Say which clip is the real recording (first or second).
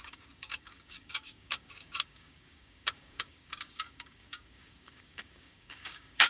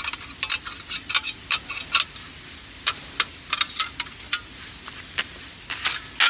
second